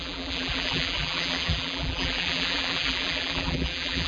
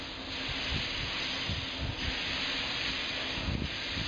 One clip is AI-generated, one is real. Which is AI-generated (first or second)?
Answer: first